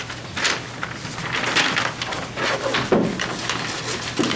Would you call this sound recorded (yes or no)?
yes